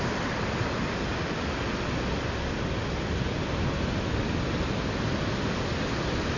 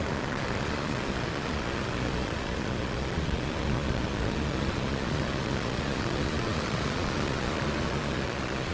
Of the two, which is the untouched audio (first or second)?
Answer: first